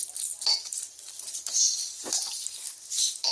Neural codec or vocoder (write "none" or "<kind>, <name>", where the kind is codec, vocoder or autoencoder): none